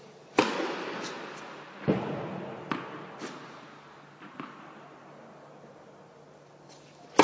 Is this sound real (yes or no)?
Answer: yes